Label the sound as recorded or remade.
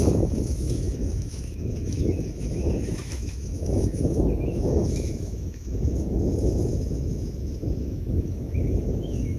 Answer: remade